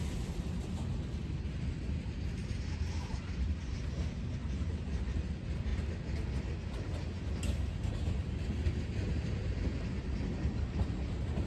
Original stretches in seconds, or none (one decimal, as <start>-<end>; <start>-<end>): 0.0-4.4; 5.0-11.5